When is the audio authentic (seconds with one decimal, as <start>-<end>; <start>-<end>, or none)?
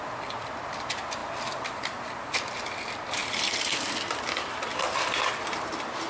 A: 0.0-1.2; 2.4-3.2; 5.3-6.1